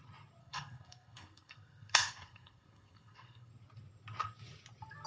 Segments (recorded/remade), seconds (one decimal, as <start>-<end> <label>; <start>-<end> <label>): 0.0-0.4 recorded; 0.4-3.5 remade; 3.5-5.1 recorded